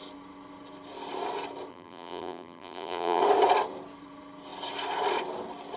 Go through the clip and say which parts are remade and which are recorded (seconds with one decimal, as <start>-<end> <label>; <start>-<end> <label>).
0.0-1.7 recorded; 1.7-3.2 remade; 3.2-5.8 recorded